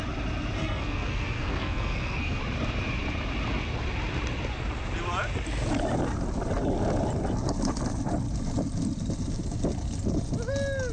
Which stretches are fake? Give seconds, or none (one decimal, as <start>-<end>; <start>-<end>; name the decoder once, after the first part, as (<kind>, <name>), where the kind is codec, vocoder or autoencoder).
0.6-2.4 (codec, SNAC)